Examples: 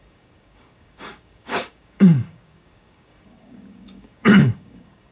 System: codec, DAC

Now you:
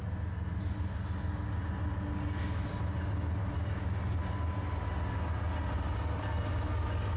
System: none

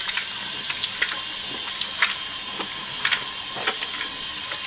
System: none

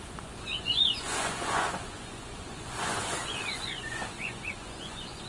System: vocoder, Vocos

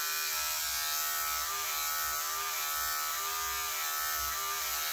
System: none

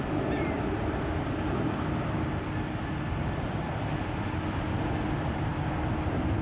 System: none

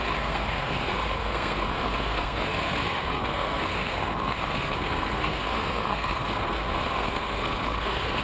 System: codec, SNAC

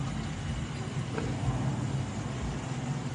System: none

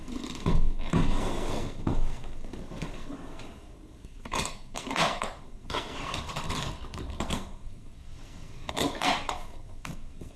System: codec, SNAC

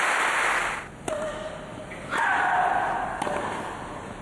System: none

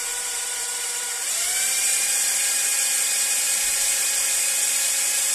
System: vocoder, BigVGAN v2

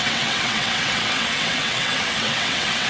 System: vocoder, WaveNeXt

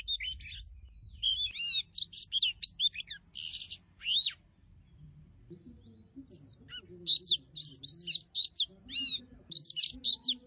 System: none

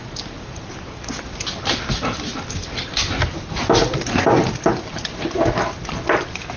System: none